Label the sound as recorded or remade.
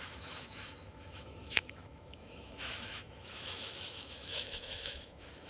remade